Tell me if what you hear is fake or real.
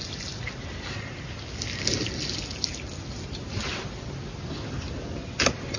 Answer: real